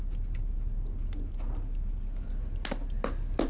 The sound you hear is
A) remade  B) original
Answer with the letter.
B